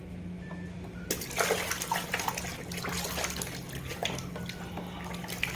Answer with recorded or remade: recorded